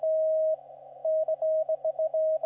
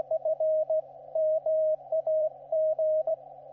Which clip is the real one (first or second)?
first